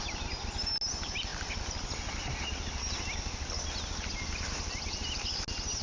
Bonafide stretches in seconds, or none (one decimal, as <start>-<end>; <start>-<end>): 0.0-5.8